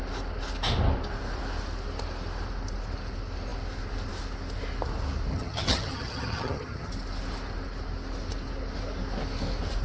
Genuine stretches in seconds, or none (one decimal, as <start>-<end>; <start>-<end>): 0.0-5.3; 6.9-9.8